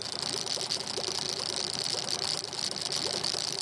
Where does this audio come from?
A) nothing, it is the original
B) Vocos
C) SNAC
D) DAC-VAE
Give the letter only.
A